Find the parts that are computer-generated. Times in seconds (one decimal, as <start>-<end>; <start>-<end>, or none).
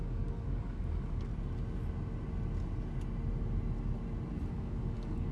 0.0-1.3; 4.5-5.3